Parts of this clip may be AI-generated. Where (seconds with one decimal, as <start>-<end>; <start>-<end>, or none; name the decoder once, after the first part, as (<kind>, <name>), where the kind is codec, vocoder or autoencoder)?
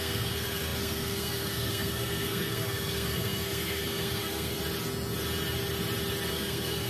0.0-4.6 (codec, SNAC); 6.3-6.9